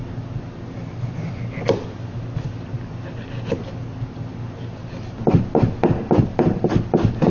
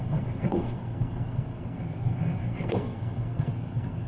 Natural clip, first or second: first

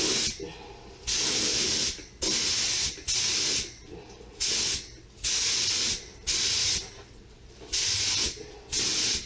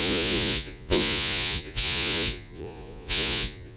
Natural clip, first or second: first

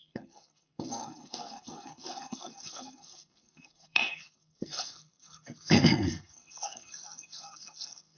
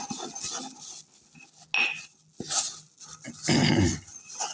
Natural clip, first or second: second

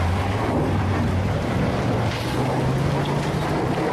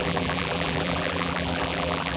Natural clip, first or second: first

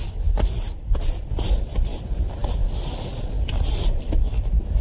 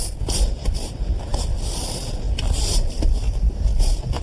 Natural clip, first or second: first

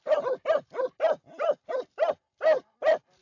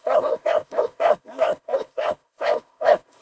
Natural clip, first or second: first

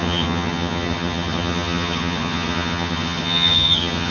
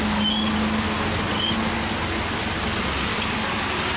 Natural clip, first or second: second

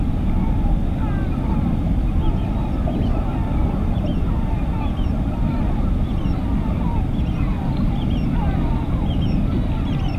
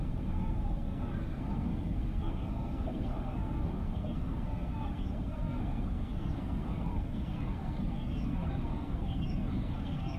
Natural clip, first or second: first